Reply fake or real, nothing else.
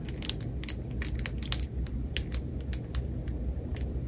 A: real